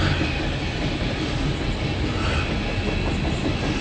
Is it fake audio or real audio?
real